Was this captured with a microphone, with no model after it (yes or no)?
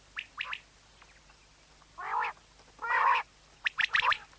yes